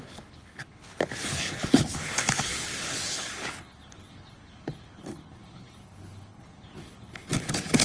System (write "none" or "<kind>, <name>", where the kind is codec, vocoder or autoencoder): codec, HILCodec